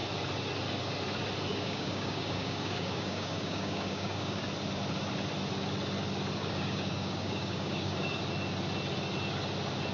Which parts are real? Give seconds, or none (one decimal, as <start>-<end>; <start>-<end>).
0.0-1.5; 4.4-6.4; 8.2-9.9